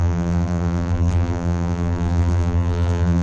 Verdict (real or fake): fake